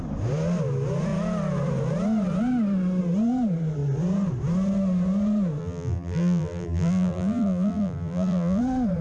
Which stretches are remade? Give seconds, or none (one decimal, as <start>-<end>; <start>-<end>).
5.6-8.6